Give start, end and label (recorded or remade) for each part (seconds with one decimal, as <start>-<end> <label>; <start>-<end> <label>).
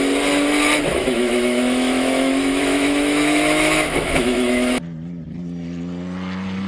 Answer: 0.0-0.9 recorded; 0.9-4.8 remade; 4.8-6.7 recorded